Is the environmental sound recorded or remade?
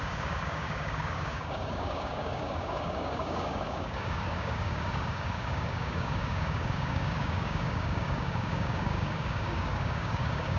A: remade